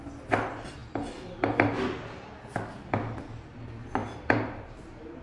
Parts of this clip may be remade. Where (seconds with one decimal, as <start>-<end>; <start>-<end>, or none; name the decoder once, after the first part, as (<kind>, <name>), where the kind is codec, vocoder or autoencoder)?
4.0-5.2 (vocoder, BigVGAN v2)

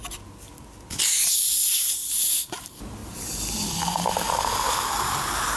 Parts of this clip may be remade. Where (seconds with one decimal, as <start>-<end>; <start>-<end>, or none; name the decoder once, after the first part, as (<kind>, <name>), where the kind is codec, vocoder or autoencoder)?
2.6-5.6 (vocoder, BigVGAN v2)

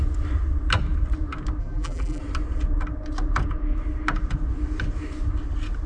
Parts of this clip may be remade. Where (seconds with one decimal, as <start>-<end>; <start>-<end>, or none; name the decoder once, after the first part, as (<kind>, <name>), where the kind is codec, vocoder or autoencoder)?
1.6-2.2 (vocoder, BigVGAN v2)

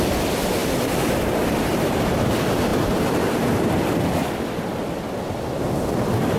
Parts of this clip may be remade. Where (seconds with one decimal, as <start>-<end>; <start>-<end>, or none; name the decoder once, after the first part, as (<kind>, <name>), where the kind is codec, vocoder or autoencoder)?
0.6-2.1 (vocoder, BigVGAN v2); 2.7-4.0

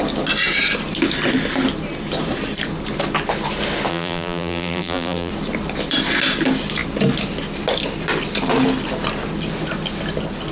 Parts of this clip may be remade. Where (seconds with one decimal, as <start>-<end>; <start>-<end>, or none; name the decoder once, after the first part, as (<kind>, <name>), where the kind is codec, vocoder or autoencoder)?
3.9-5.3 (vocoder, BigVGAN v2)

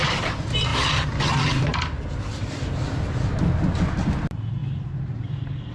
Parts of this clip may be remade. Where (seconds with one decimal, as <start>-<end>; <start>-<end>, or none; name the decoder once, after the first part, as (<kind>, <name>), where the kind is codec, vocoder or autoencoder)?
0.7-1.2 (vocoder, BigVGAN v2); 4.6-5.7